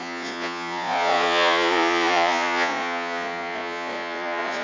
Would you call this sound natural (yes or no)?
no